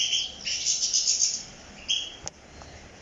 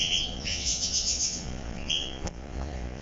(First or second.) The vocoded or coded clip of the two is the second